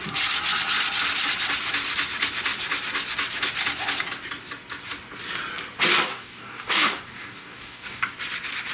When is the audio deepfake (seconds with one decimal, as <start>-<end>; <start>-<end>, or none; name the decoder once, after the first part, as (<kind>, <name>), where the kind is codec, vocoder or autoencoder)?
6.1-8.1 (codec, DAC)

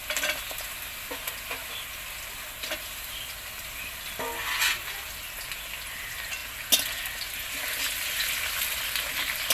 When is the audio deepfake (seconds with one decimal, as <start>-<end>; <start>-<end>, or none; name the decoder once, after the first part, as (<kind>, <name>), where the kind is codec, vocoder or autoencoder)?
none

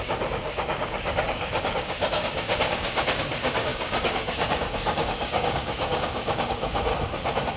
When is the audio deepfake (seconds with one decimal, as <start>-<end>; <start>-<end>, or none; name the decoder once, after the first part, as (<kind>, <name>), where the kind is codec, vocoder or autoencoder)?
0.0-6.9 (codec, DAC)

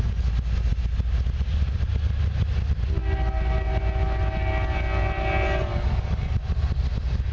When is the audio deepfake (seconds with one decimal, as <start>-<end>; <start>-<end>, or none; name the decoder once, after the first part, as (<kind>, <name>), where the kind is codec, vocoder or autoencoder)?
5.7-6.3 (codec, DAC)

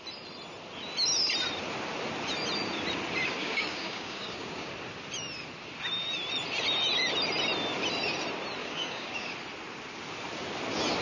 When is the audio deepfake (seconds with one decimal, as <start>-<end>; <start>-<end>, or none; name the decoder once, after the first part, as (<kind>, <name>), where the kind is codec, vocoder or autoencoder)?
3.4-4.7 (codec, DAC); 8.6-9.3

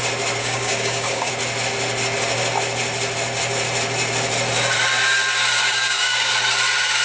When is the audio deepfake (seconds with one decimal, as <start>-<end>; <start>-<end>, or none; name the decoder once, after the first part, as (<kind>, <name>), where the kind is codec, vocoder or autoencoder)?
0.4-1.3 (codec, DAC); 5.6-6.3

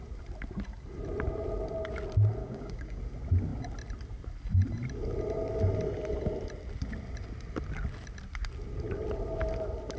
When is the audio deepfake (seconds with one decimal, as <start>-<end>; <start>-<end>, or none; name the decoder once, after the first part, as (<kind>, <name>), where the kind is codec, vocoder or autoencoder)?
2.4-3.0 (codec, DAC)